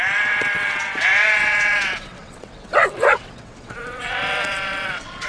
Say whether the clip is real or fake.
fake